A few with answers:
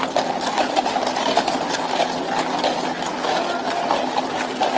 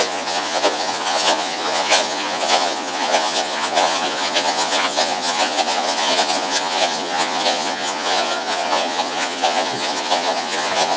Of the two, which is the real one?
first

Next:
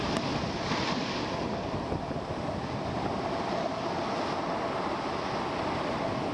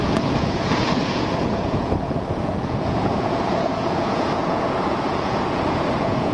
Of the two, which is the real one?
first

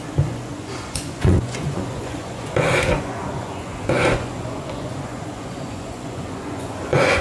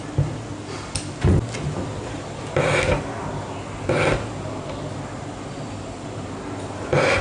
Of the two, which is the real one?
second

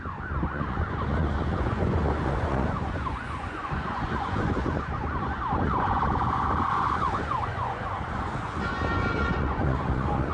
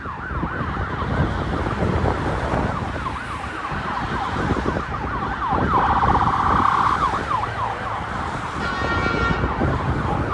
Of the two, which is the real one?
second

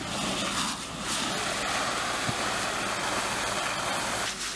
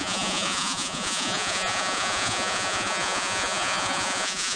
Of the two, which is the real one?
first